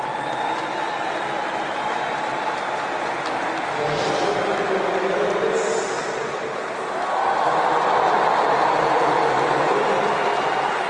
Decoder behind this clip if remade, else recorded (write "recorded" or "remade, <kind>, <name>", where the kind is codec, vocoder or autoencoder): recorded